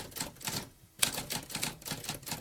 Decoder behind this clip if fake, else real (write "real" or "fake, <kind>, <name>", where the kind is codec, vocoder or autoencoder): real